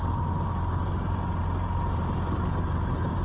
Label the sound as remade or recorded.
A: remade